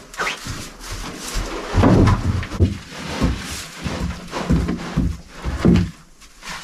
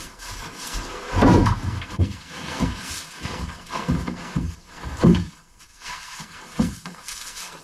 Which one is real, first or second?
first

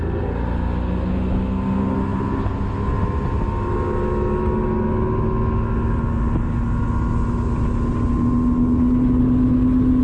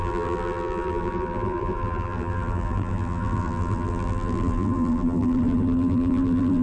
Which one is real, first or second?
first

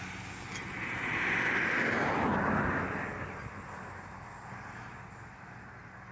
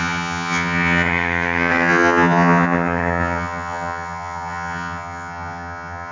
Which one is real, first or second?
first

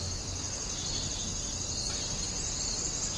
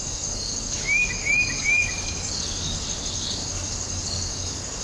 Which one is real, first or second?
first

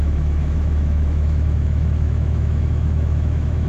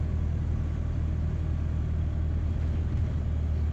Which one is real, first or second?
second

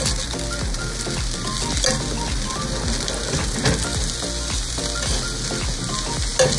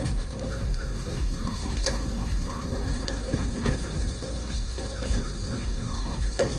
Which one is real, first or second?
first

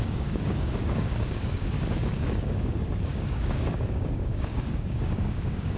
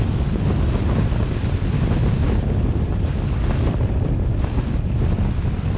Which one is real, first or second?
second